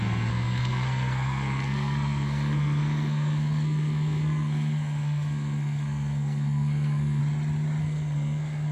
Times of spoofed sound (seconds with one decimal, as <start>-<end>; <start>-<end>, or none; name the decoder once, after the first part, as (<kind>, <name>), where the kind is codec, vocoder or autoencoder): 0.0-7.2 (codec, SNAC); 7.8-8.7